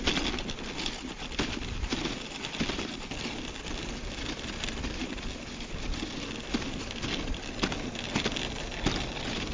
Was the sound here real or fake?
real